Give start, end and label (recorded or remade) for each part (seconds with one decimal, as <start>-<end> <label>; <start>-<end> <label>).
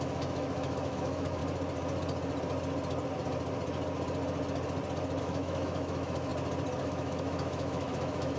0.0-1.4 remade; 1.4-5.2 recorded; 5.2-6.3 remade; 6.3-6.8 recorded; 6.8-8.4 remade